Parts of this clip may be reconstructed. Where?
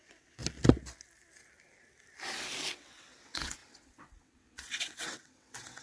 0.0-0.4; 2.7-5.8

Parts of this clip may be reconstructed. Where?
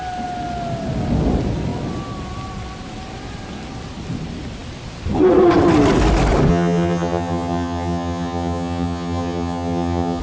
6.5-10.2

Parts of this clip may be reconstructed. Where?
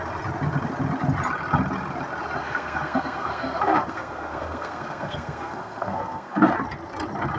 2.4-6.5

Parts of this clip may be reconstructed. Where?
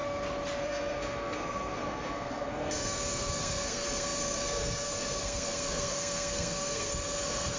0.6-7.6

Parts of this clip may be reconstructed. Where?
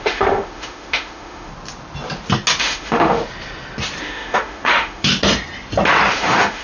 0.0-1.5; 2.6-3.2; 4.0-5.1; 6.1-6.6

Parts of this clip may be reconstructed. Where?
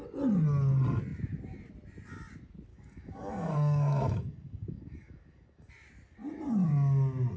2.7-5.7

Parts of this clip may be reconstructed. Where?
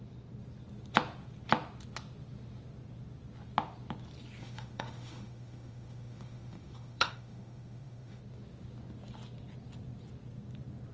4.4-8.2